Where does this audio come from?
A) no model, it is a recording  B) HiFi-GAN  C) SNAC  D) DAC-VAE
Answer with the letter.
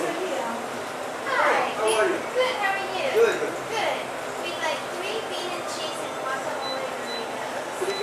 A